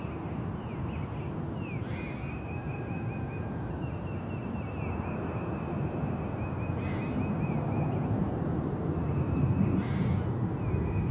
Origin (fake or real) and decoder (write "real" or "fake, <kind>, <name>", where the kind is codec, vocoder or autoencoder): real